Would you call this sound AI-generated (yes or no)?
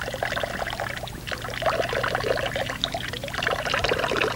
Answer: no